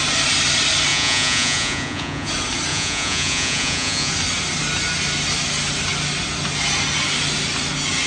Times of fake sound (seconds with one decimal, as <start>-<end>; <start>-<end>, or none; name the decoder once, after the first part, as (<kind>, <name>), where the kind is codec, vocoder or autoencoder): 0.9-2.3 (vocoder, Vocos); 2.7-4.1